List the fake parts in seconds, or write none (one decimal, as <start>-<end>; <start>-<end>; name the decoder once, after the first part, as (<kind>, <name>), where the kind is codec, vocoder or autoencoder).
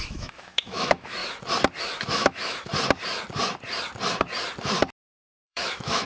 0.0-1.2 (autoencoder, DAC-VAE); 1.8-2.7; 5.0-6.1